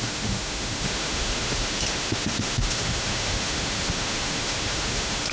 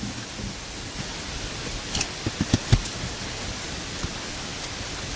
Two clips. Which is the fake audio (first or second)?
first